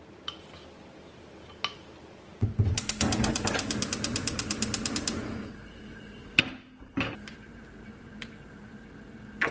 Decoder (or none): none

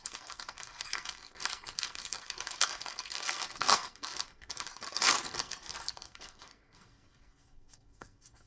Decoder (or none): codec, SNAC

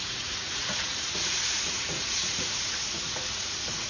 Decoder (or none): vocoder, Vocos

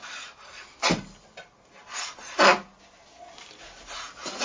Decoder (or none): none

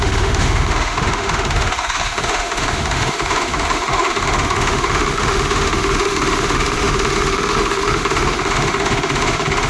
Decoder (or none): autoencoder, DAC-VAE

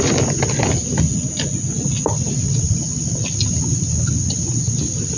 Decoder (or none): none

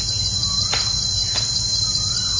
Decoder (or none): none